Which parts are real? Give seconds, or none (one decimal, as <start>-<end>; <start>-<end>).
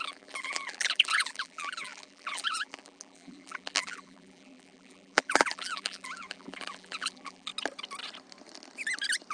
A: 7.5-9.3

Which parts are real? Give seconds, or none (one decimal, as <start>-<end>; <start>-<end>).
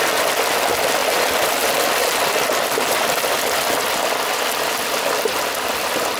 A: 0.0-6.2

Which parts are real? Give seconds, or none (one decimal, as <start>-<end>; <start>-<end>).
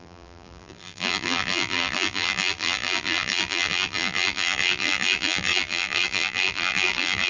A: none